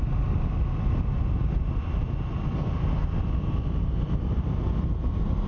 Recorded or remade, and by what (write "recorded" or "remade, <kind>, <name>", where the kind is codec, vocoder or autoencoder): recorded